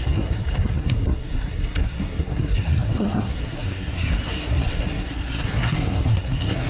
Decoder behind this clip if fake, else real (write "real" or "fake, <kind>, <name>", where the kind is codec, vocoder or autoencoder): fake, codec, SNAC